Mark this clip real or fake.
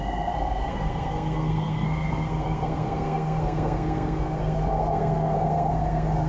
fake